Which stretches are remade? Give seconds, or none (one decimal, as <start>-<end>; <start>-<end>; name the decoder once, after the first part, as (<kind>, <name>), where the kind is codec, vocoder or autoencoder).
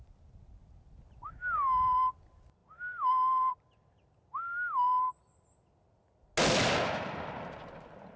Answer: 2.6-3.5 (vocoder, BigVGAN v2)